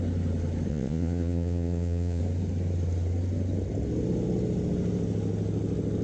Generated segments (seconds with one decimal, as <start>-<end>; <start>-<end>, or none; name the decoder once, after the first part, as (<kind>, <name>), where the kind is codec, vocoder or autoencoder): 0.7-2.2 (vocoder, Vocos)